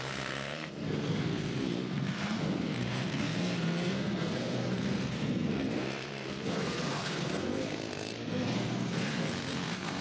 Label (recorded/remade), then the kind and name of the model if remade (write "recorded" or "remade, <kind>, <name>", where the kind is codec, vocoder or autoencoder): remade, codec, SNAC